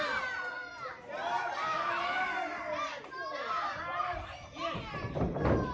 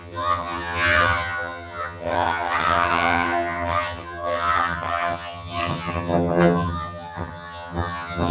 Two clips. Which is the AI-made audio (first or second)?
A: second